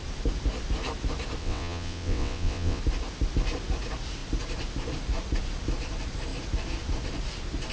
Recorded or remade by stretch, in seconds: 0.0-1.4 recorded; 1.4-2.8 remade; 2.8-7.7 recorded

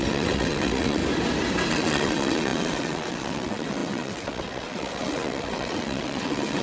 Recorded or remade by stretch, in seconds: 0.0-1.0 remade; 1.0-1.7 recorded; 1.7-6.6 remade

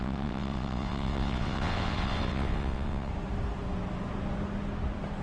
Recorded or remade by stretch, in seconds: 0.0-3.1 remade; 3.1-5.2 recorded

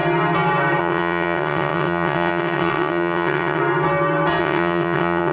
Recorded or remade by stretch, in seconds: 0.0-0.8 recorded; 0.8-3.6 remade; 3.6-4.4 recorded; 4.4-5.3 remade